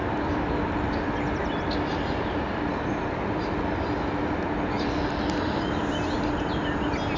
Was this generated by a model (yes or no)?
no